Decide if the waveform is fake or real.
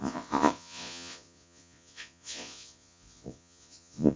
fake